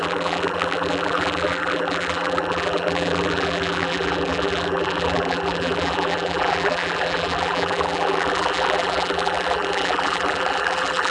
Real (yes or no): no